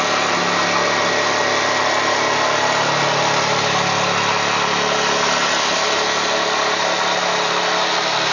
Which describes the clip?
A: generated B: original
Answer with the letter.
B